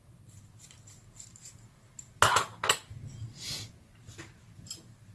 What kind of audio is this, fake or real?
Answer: real